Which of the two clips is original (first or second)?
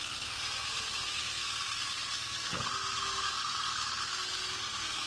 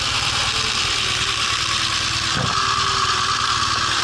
second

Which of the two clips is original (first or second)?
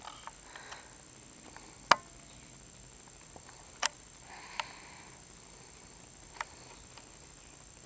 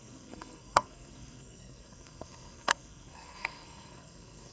first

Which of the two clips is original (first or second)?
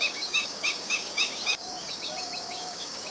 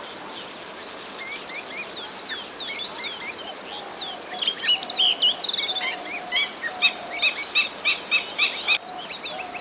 second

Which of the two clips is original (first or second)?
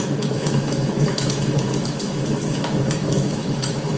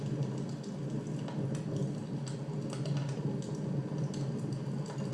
second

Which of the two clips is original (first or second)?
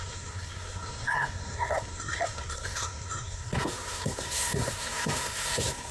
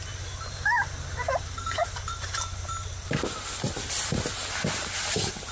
second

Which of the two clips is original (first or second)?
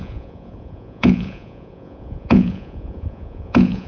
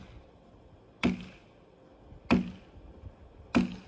second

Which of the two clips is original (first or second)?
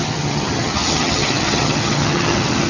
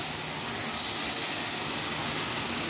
second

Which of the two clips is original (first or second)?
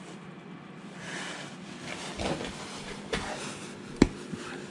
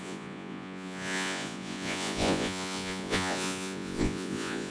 first